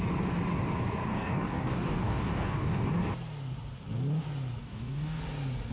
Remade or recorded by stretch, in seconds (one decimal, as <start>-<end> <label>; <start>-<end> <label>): 0.0-1.1 recorded; 1.1-2.9 remade; 2.9-4.6 recorded; 4.6-5.2 remade; 5.2-5.7 recorded